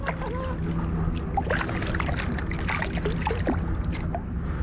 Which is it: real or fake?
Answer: real